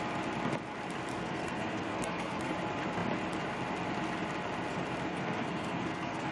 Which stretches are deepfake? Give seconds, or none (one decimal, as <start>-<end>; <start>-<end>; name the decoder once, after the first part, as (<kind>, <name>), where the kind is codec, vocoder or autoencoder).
1.1-2.5 (codec, SNAC); 5.1-6.3